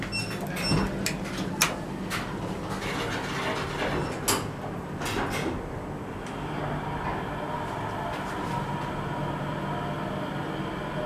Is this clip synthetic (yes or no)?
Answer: no